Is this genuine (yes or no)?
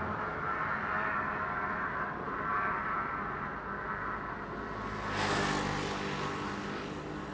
yes